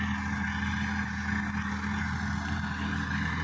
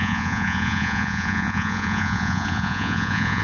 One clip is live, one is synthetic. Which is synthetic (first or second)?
second